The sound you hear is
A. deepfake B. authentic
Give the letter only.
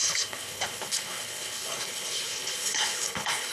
A